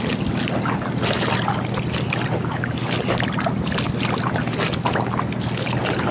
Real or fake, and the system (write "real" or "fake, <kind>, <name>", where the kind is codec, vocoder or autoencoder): real